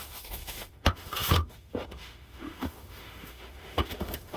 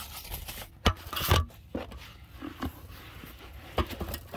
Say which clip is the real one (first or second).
second